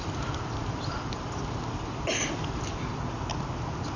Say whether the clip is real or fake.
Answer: real